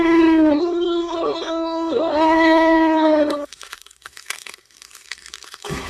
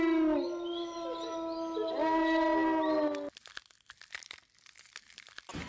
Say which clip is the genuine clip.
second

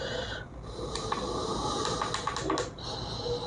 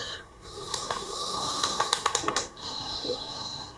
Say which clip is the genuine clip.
first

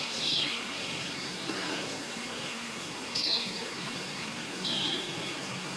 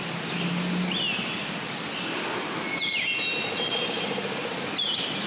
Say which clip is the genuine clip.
second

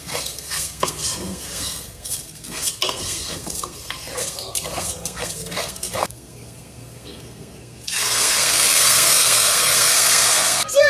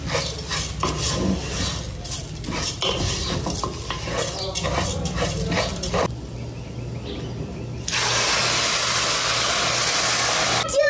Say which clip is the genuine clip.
second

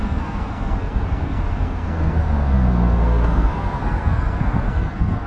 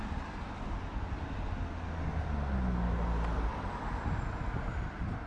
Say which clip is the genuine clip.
second